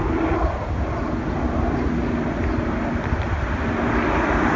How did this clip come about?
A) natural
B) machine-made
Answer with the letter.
A